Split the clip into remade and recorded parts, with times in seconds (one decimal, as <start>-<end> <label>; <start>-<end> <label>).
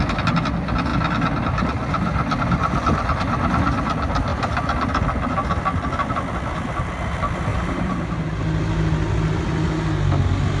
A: 0.0-7.5 recorded; 7.5-8.4 remade; 8.4-10.6 recorded